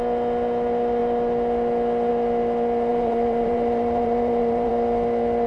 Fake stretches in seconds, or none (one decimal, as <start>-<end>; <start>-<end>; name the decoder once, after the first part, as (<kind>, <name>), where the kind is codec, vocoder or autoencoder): 2.9-4.7 (vocoder, BigVGAN v2)